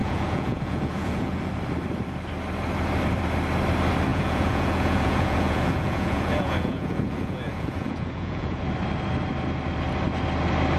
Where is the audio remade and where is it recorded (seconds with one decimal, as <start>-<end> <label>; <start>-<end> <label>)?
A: 0.0-1.5 remade; 1.5-4.1 recorded; 4.1-8.6 remade; 8.6-10.8 recorded